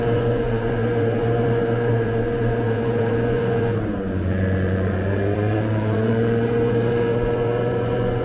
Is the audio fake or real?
fake